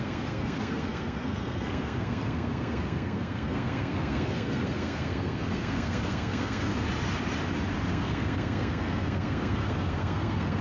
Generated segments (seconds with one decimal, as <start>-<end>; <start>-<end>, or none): 0.0-6.7; 7.9-10.6